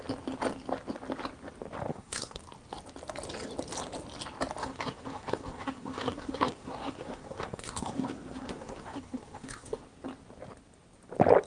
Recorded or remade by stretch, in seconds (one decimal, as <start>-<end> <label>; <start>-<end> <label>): 0.0-1.9 recorded; 1.9-2.4 remade; 2.4-4.6 recorded; 4.6-9.8 remade; 9.8-11.5 recorded